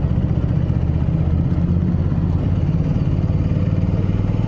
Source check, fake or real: real